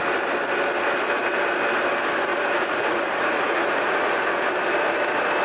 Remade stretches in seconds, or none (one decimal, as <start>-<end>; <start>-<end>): 2.3-4.5